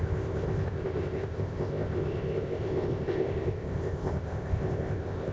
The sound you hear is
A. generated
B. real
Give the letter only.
A